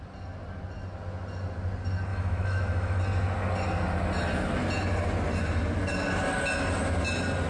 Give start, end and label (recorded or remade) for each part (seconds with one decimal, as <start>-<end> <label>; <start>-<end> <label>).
0.0-2.1 recorded; 2.1-3.0 remade; 3.0-7.5 recorded